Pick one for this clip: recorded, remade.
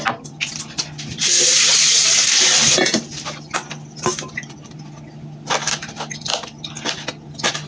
recorded